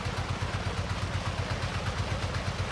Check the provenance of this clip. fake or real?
real